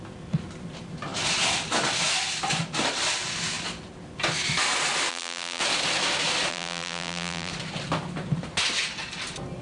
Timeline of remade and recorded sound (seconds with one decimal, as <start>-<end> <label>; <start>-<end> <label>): 0.0-5.1 recorded; 5.1-5.6 remade; 5.6-6.5 recorded; 6.5-7.5 remade; 7.5-9.6 recorded